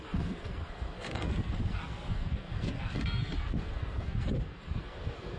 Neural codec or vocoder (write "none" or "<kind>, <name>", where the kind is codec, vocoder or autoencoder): codec, SNAC